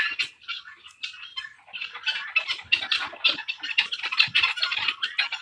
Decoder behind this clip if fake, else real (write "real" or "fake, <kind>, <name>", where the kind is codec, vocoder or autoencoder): real